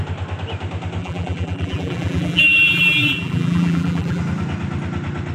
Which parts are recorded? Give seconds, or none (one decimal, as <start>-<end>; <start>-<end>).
0.0-1.0; 4.2-5.3